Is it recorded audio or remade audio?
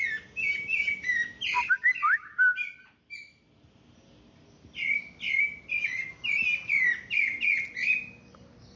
recorded